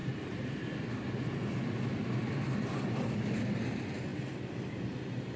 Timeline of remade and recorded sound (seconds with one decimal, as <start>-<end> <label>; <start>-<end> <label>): 0.0-1.0 remade; 1.0-2.2 recorded; 2.2-2.8 remade; 2.8-4.1 recorded; 4.1-5.4 remade